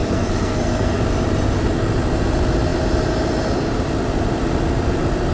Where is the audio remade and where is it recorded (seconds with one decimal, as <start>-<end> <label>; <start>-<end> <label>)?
0.0-1.0 remade; 1.0-5.3 recorded